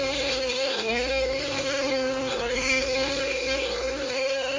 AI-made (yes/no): yes